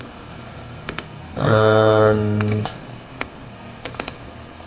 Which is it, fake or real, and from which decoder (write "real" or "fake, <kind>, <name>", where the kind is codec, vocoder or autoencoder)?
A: fake, codec, SNAC